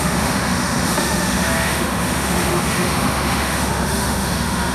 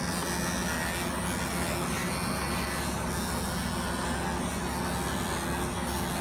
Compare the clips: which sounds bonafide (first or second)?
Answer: second